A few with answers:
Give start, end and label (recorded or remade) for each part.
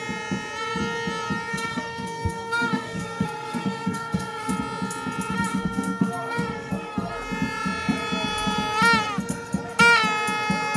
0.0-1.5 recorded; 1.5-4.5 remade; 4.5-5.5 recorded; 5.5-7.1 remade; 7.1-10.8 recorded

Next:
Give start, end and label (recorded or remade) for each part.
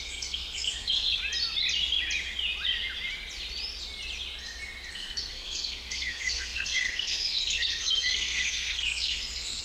0.0-1.2 remade; 1.2-4.9 recorded; 4.9-9.6 remade